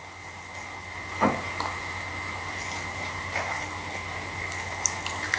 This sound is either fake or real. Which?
real